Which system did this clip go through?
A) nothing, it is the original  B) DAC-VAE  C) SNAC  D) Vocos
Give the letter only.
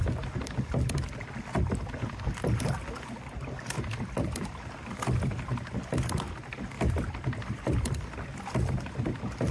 A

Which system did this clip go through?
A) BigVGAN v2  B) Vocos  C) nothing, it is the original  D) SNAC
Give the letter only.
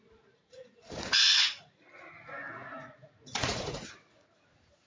B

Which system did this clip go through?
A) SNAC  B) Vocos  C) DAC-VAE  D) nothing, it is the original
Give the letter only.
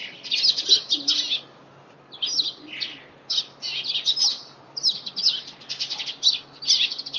D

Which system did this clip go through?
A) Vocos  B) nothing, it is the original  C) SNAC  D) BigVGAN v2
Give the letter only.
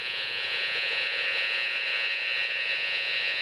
A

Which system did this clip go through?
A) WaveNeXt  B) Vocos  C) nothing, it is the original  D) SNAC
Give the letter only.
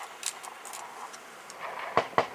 C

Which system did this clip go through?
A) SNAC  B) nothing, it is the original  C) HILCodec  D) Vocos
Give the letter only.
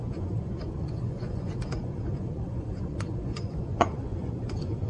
D